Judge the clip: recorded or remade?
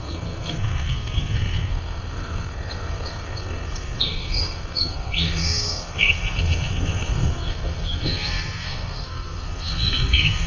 remade